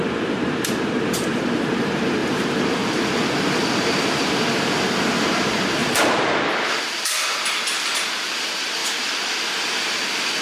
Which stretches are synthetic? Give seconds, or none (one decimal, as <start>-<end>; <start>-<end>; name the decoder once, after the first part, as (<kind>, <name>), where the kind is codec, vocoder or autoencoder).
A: 0.0-2.2 (vocoder, BigVGAN v2); 3.4-10.4